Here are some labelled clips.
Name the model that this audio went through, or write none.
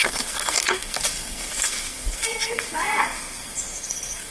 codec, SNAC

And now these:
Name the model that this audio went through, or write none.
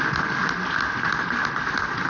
none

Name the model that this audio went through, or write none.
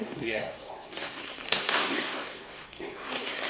codec, SNAC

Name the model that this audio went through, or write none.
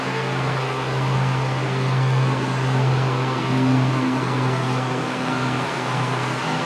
codec, SNAC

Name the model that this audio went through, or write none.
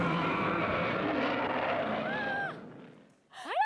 none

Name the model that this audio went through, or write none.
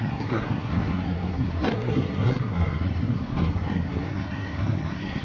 codec, SNAC